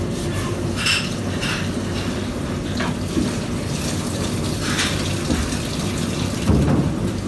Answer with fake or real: real